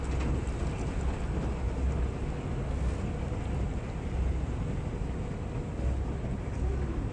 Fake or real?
real